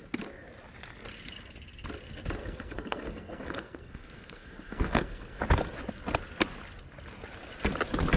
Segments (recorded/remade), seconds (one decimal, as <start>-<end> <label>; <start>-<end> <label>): 0.0-2.4 recorded; 2.4-5.4 remade; 5.4-8.2 recorded